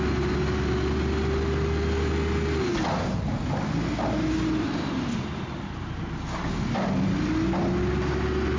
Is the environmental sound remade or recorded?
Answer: recorded